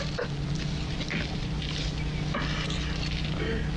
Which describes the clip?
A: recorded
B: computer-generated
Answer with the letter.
A